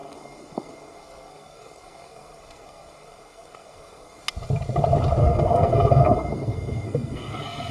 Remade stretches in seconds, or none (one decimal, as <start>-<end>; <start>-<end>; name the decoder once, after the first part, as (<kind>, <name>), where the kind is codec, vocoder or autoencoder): 0.0-4.2 (codec, SNAC); 5.2-7.7